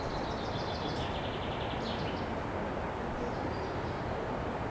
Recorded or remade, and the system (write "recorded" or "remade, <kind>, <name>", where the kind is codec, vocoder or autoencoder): recorded